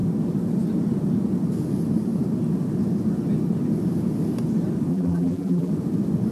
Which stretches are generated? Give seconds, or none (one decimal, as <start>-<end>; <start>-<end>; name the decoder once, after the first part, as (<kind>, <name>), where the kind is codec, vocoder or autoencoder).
4.9-5.7 (vocoder, BigVGAN v2)